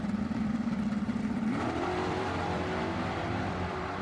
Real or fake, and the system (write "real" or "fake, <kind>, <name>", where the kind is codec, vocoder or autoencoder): fake, vocoder, BigVGAN v2